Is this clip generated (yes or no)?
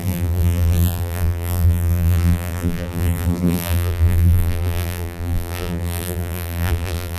yes